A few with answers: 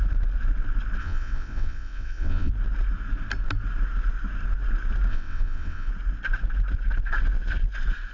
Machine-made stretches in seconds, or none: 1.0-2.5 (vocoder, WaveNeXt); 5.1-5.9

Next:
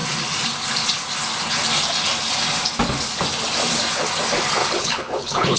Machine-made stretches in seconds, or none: 4.6-5.6 (codec, HILCodec)